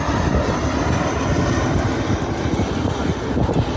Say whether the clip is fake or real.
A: real